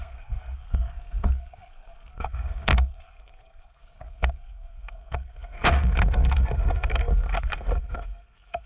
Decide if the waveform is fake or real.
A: fake